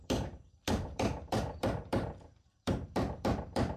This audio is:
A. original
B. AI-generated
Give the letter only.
B